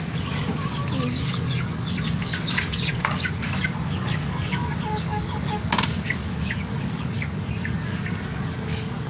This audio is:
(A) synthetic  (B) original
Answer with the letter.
A